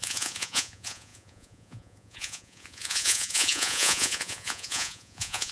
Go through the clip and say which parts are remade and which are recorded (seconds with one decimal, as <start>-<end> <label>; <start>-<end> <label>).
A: 0.0-5.5 remade

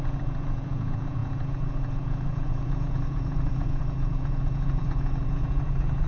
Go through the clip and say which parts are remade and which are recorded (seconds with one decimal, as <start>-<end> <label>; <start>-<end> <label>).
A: 0.0-6.1 remade

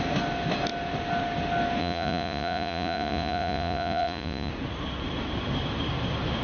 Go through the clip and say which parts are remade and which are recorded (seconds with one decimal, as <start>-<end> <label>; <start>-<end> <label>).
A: 0.0-1.8 recorded; 1.8-4.5 remade; 4.5-6.4 recorded

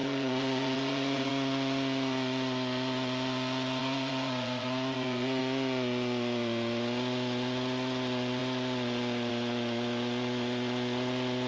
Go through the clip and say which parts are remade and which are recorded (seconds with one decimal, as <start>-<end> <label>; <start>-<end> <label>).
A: 0.0-1.3 remade; 1.3-3.8 recorded; 3.8-5.4 remade; 5.4-11.5 recorded